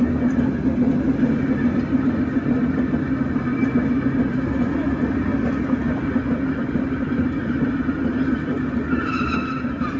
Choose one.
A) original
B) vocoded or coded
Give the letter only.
A